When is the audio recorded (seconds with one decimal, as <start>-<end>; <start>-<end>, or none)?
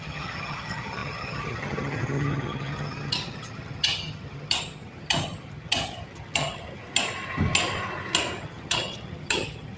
6.8-8.4